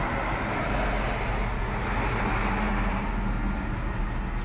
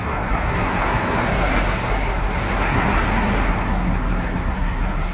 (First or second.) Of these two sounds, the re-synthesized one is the second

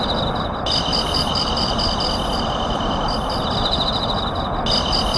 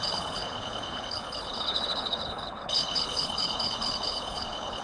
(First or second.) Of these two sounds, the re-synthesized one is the second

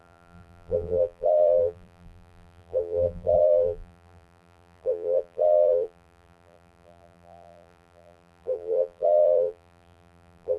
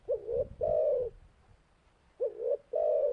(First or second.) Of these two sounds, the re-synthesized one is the first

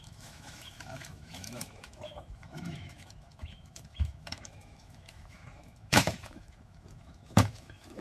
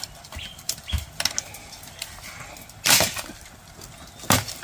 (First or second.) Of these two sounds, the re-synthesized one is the first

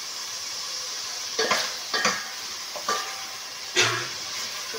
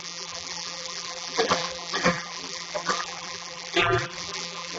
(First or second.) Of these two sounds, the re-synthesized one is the second